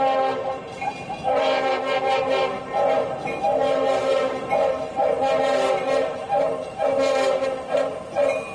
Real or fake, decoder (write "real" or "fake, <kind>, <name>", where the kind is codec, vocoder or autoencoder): fake, vocoder, BigVGAN v2